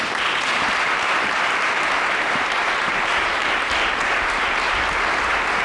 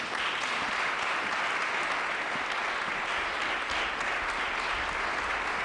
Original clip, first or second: second